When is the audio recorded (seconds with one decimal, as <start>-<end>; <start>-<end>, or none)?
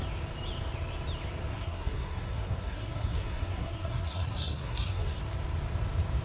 0.0-1.5; 5.2-6.2